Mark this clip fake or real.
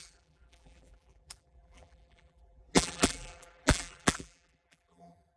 fake